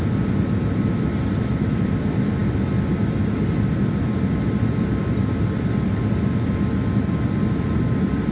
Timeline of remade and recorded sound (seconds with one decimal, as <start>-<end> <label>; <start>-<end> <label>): 0.0-8.3 recorded